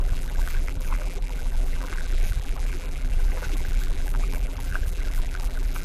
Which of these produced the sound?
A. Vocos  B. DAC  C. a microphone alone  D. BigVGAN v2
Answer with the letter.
D